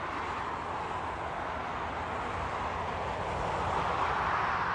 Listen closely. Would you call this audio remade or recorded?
recorded